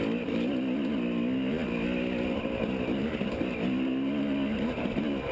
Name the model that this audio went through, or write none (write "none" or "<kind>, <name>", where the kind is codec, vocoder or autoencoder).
none